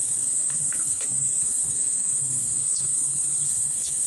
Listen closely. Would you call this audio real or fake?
fake